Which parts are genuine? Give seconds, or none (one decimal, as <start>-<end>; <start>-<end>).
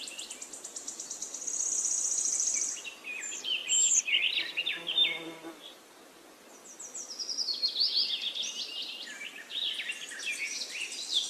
0.0-11.3